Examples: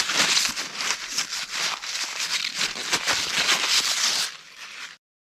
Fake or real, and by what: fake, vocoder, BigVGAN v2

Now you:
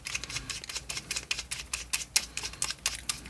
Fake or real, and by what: real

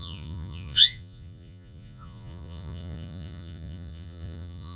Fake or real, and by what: fake, vocoder, Vocos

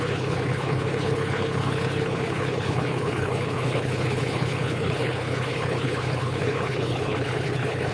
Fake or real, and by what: fake, codec, HILCodec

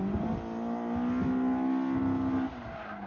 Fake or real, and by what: real